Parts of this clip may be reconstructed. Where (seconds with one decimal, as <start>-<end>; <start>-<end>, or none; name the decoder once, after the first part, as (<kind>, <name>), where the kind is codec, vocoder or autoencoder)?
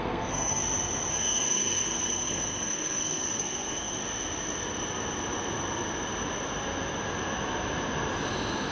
0.0-0.6 (codec, SNAC); 1.1-4.0